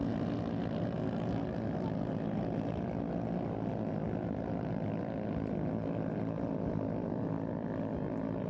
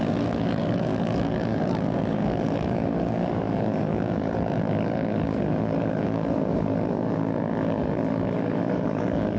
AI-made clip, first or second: second